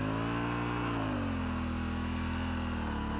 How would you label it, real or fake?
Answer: real